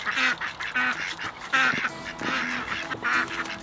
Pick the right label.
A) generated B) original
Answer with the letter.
B